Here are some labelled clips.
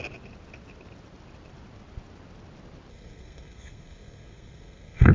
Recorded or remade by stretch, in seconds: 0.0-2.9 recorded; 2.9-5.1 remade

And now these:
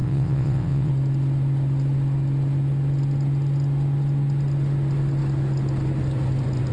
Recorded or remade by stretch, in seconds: 0.0-0.9 remade; 0.9-6.7 recorded

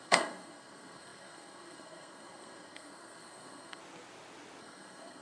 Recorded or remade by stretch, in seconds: 0.0-3.8 remade; 3.8-4.6 recorded; 4.6-5.2 remade

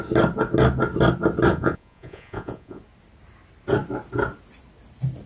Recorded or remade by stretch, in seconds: 0.0-1.5 recorded; 1.5-2.8 remade; 2.8-5.3 recorded